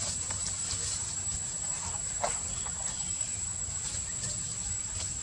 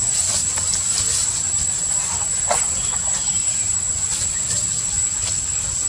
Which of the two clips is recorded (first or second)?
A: second